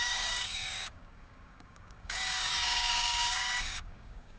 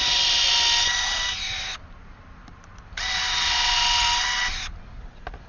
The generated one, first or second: first